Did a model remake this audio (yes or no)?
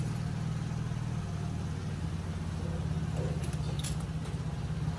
no